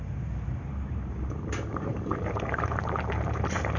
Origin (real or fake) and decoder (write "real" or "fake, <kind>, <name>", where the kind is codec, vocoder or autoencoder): fake, vocoder, BigVGAN v2